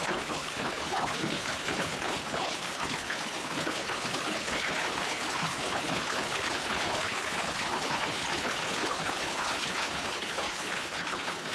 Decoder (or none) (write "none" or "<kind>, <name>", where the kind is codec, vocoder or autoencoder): codec, HILCodec